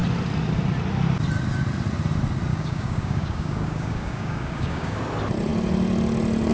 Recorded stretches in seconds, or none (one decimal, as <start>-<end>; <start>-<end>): 0.0-2.5; 5.0-6.5